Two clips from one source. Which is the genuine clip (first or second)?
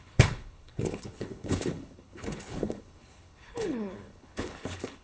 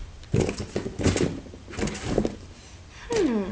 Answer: second